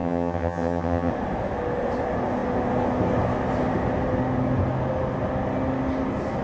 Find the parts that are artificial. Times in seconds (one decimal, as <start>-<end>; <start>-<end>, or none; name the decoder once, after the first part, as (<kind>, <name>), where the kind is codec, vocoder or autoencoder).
0.0-1.1 (vocoder, HiFi-GAN)